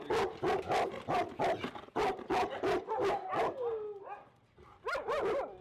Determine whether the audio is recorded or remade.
recorded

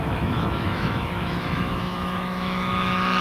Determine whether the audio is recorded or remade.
remade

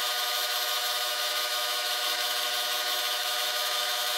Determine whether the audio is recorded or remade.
remade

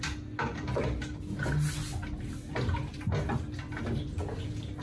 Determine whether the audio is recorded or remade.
recorded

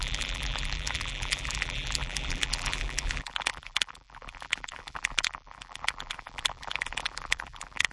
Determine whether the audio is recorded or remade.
remade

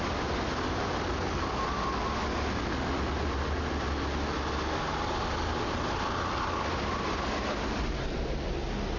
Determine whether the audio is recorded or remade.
recorded